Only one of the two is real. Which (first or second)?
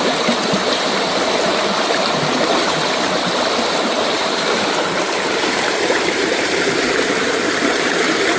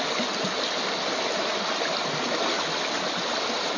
second